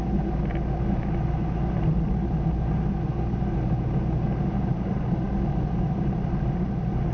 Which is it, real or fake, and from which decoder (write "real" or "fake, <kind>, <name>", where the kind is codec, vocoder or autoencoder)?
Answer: real